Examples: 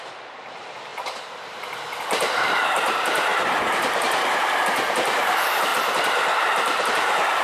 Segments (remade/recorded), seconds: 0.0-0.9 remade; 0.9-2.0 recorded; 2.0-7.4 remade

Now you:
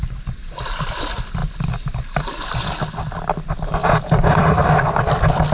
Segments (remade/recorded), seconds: 0.0-3.8 recorded; 3.8-5.0 remade; 5.0-5.5 recorded

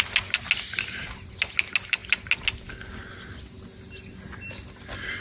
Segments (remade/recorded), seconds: 0.0-5.2 recorded

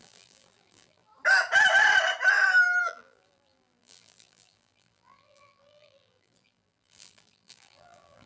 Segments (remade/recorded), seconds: 0.0-1.1 remade; 1.1-2.8 recorded; 2.8-8.3 remade

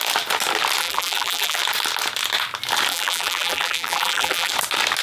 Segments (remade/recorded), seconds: 0.0-0.8 recorded; 0.8-1.6 remade; 1.6-2.9 recorded; 2.9-4.5 remade; 4.5-5.0 recorded

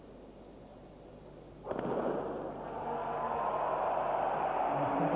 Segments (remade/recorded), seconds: 0.0-0.7 remade; 0.7-3.8 recorded; 3.8-5.2 remade